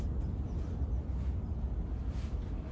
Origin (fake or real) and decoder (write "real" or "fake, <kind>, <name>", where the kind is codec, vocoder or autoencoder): real